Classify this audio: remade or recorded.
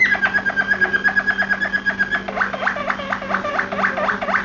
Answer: recorded